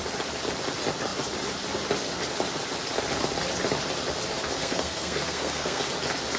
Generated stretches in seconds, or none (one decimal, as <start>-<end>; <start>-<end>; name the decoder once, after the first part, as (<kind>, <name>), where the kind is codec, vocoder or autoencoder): 4.6-5.8 (codec, SNAC)